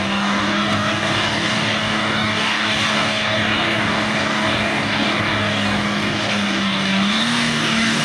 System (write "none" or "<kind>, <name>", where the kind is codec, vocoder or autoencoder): codec, DAC